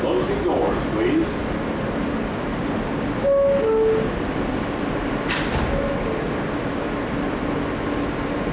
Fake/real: real